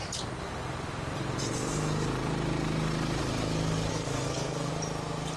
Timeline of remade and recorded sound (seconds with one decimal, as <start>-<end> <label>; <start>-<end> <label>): 0.0-3.9 recorded; 3.9-4.7 remade; 4.7-5.4 recorded